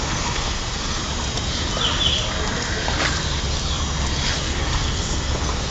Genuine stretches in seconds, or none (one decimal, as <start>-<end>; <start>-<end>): 1.0-4.4